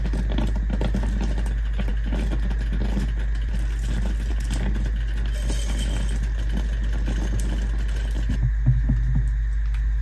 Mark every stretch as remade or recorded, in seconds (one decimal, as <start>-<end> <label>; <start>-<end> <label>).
0.0-10.0 recorded